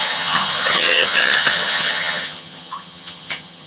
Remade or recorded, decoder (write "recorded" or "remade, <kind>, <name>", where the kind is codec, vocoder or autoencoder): remade, vocoder, HiFi-GAN